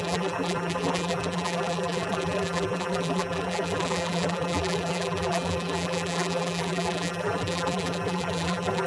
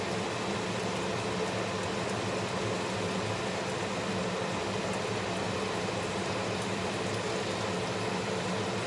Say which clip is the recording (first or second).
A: second